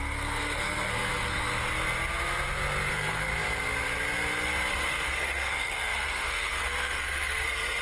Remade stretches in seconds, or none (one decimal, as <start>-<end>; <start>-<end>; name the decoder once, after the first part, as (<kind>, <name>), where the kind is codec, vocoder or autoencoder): 0.0-1.5 (codec, SNAC); 2.9-3.3; 4.7-7.8

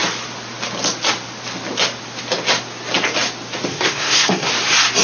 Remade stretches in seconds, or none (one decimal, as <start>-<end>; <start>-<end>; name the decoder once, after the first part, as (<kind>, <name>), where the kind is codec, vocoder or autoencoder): 3.7-4.5 (codec, SNAC)

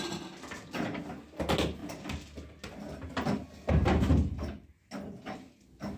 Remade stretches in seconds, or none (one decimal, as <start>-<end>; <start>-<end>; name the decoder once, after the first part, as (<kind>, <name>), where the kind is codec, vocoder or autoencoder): none

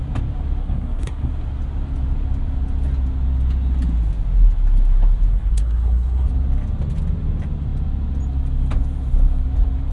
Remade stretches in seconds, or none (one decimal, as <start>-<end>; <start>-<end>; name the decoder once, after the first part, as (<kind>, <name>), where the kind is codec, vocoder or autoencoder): 0.6-1.3 (codec, SNAC); 5.3-6.3

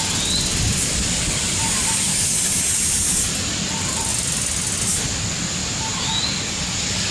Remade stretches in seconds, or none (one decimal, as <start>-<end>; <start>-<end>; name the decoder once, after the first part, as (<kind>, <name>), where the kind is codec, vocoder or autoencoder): none

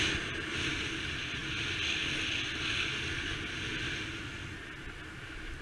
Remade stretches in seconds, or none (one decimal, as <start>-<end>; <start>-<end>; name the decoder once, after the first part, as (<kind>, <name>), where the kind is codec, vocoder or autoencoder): none

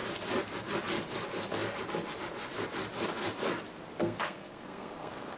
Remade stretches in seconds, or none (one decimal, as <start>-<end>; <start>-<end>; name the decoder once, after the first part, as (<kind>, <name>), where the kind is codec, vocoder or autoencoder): 4.0-5.4 (codec, SNAC)

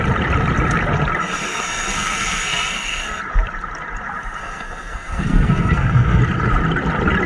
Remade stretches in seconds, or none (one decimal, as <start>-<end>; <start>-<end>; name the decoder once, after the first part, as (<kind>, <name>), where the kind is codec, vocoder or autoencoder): 1.5-3.2 (codec, SNAC); 4.4-6.2